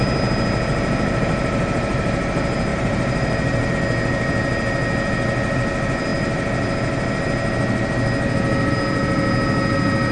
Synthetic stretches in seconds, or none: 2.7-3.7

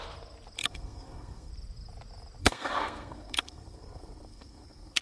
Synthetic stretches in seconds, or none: 0.6-1.5; 2.4-5.0

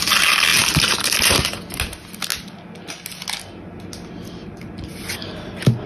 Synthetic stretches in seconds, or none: 0.5-1.6

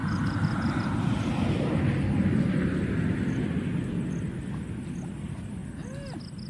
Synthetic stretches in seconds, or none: 0.0-1.8

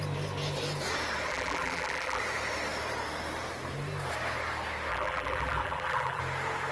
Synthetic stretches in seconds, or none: 1.3-2.2; 4.9-6.2